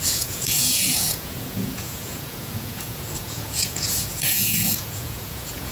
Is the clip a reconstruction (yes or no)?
yes